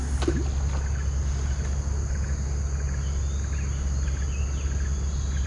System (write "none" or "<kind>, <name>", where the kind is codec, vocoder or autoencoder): none